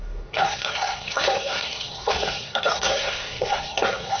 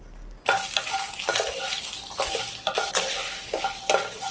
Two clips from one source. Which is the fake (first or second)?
first